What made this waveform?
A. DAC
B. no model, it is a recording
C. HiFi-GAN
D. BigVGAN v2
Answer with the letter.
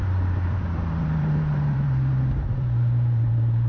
D